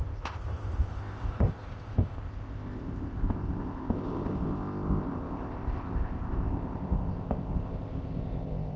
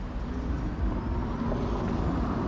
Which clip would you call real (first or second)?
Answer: second